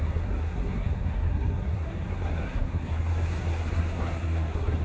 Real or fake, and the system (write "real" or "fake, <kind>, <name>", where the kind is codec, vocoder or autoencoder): fake, codec, SNAC